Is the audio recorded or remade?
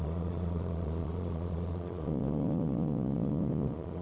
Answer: remade